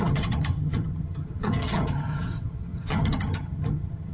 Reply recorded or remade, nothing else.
remade